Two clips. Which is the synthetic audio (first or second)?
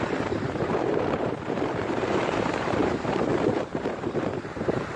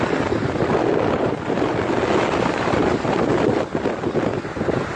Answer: first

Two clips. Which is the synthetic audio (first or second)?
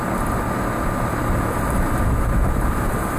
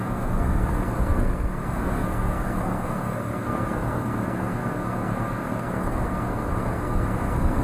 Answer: second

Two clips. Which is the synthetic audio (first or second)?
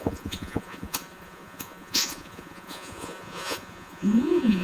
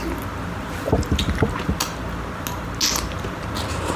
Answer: first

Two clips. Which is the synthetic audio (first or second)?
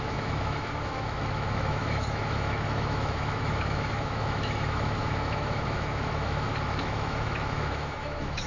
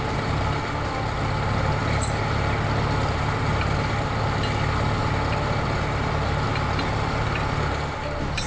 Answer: first